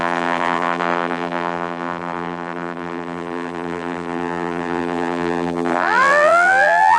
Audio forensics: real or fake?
fake